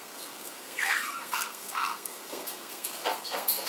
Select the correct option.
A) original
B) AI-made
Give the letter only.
B